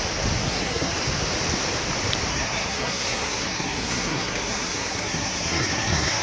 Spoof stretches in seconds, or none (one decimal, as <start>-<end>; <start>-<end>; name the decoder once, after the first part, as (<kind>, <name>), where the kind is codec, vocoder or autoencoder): 0.4-0.9 (codec, SNAC); 2.3-6.2

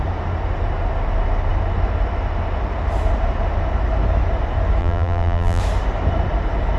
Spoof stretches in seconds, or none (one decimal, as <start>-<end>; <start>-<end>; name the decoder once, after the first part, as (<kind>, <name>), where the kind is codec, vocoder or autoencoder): 4.8-5.6 (vocoder, BigVGAN v2)

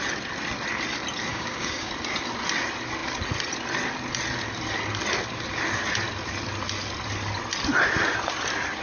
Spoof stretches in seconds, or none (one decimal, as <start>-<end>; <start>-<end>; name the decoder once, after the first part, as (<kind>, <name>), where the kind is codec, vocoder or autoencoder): 1.3-1.9 (codec, DAC)